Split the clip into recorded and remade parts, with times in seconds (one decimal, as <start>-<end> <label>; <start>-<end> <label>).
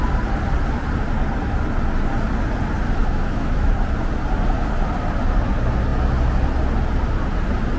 0.0-3.0 recorded; 3.0-3.7 remade; 3.7-7.8 recorded